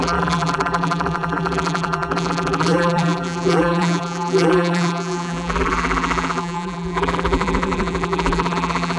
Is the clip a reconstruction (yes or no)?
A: yes